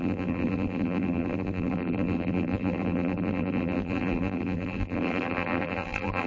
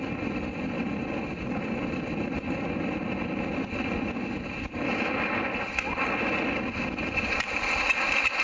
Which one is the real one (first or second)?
second